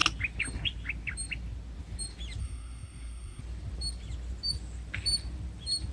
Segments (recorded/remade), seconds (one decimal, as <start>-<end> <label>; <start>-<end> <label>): 0.0-2.4 recorded; 2.4-3.4 remade; 3.4-5.9 recorded